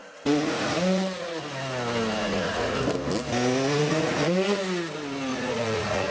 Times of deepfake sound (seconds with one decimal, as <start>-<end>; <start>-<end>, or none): 0.0-1.4; 2.2-2.8; 3.8-4.6; 5.3-6.1